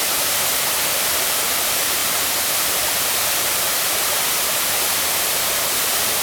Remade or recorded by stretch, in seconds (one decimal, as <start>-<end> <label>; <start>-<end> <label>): 0.0-6.2 remade